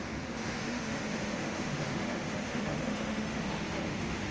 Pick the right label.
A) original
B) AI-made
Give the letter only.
B